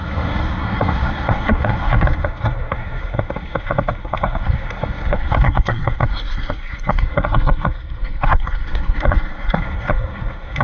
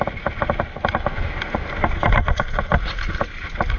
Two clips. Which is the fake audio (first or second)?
first